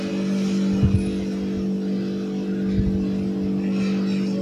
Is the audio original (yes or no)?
yes